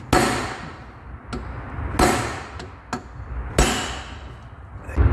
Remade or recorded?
recorded